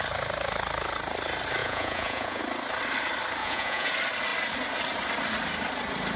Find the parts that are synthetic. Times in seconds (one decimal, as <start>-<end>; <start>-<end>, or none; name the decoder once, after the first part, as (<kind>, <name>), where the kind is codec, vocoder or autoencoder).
1.6-2.4 (vocoder, Vocos); 3.4-3.9